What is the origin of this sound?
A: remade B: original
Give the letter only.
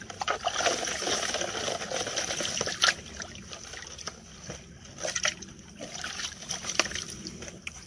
B